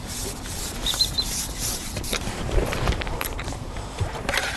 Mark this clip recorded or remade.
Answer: remade